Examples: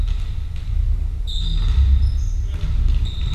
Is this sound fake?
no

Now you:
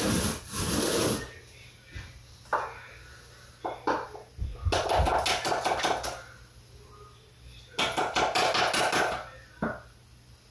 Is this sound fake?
no